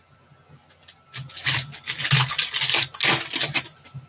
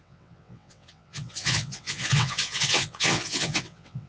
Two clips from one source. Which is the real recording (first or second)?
first